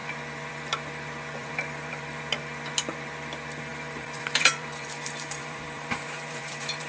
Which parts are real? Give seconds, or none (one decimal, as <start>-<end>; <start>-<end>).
0.0-1.4; 2.2-3.7